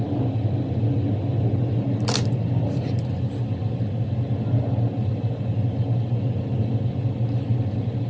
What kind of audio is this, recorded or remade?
recorded